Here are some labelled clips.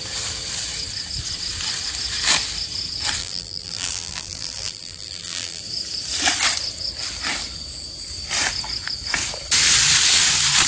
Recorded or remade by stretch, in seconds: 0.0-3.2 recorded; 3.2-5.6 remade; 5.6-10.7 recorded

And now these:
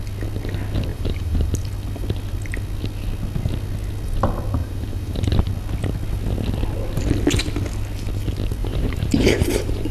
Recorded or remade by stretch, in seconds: 0.0-0.9 recorded; 0.9-1.5 remade; 1.5-4.6 recorded; 4.6-5.5 remade; 5.5-8.6 recorded; 8.6-9.9 remade

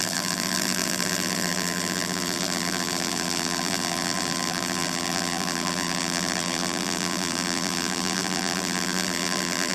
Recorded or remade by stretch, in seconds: 0.0-9.7 remade

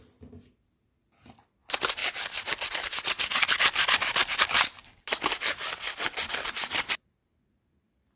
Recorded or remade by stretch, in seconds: 0.0-4.8 recorded; 4.8-5.4 remade; 5.4-8.2 recorded

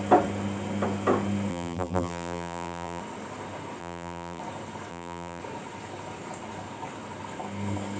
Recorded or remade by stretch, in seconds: 0.0-1.5 recorded; 1.5-3.0 remade; 3.0-3.8 recorded; 3.8-4.4 remade; 4.4-4.9 recorded; 4.9-5.4 remade; 5.4-8.0 recorded

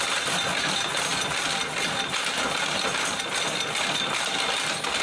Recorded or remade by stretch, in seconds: 0.0-5.0 recorded

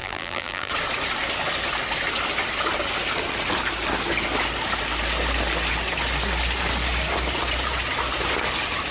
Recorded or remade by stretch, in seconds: 0.0-0.7 remade; 0.7-8.9 recorded

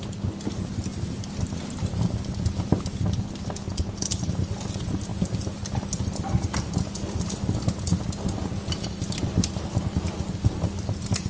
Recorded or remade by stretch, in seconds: 0.0-11.3 recorded